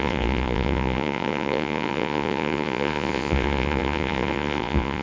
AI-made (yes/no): yes